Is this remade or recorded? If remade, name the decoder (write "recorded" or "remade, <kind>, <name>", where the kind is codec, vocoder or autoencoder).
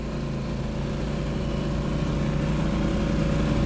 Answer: recorded